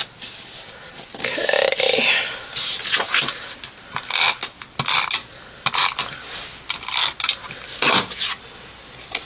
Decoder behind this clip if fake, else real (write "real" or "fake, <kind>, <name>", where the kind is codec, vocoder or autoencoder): real